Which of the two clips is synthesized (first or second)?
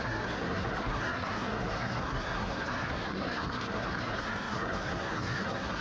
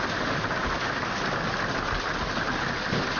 first